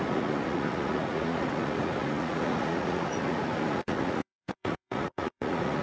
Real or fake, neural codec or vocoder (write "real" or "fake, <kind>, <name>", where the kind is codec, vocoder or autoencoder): fake, vocoder, Vocos